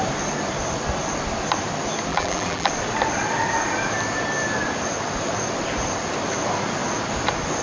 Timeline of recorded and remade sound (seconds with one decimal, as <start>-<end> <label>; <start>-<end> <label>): 0.0-2.1 recorded; 2.1-2.7 remade; 2.7-7.6 recorded